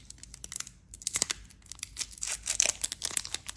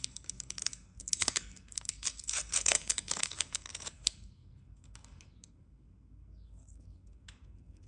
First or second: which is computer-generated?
second